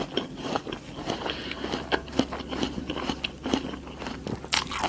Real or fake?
real